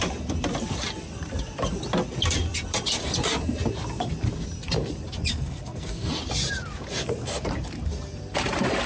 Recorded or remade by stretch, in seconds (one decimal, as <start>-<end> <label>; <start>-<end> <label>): 0.0-5.3 recorded; 5.3-6.1 remade; 6.1-8.9 recorded